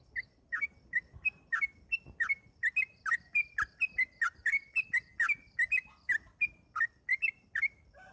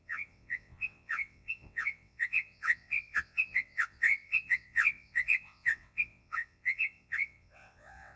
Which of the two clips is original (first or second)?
first